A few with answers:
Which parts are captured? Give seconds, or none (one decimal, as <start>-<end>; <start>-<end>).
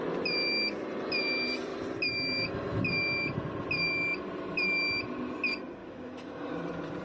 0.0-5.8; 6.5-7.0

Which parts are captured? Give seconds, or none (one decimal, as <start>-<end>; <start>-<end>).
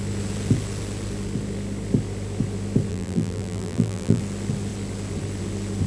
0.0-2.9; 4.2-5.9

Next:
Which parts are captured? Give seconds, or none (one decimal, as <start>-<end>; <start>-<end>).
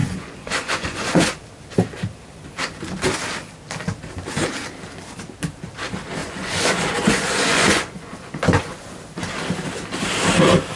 1.3-6.2; 8.9-10.8